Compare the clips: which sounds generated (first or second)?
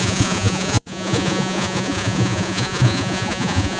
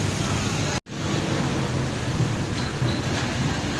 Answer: first